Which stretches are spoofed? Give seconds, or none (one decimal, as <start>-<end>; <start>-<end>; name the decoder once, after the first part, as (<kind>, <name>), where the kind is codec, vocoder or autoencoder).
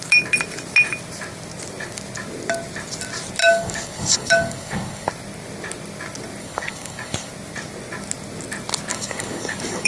3.4-5.1 (codec, DAC); 6.4-7.3; 8.9-9.9